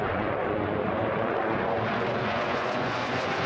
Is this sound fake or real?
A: fake